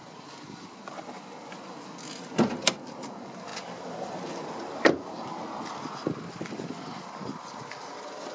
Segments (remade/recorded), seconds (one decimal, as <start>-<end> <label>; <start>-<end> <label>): 0.0-8.3 recorded